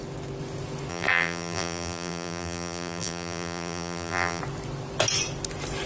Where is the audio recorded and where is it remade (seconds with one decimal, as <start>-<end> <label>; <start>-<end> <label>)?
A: 0.0-0.9 recorded; 0.9-4.4 remade; 4.4-5.9 recorded